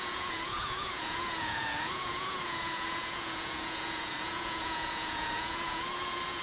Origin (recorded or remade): remade